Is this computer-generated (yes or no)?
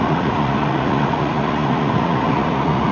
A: yes